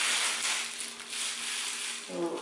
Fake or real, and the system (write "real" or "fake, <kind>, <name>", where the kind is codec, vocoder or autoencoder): real